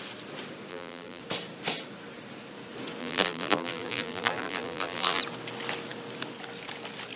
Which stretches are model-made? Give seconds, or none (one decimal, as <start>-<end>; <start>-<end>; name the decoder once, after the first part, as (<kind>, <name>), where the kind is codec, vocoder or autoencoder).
0.7-1.2 (vocoder, BigVGAN v2); 3.0-5.2

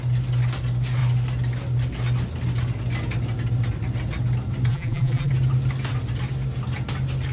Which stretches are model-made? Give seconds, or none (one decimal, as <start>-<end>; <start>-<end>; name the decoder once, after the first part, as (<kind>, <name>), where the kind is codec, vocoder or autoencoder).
4.7-5.3 (vocoder, BigVGAN v2)

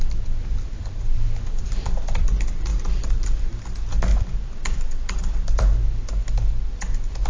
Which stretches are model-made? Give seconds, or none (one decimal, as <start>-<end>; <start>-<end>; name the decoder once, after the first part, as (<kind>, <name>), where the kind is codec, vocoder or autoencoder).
1.6-2.3 (vocoder, BigVGAN v2); 2.7-3.5; 4.1-6.0

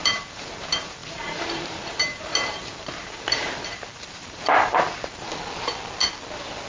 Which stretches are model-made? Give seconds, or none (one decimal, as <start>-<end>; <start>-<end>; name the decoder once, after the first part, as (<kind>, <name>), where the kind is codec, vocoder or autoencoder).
0.0-5.3 (vocoder, BigVGAN v2)